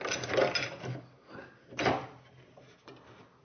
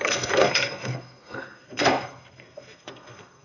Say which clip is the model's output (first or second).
second